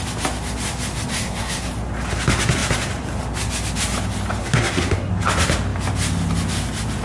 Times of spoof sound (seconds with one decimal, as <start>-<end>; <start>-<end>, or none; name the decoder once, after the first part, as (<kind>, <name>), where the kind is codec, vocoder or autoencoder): 1.1-1.7 (codec, SNAC); 4.4-5.1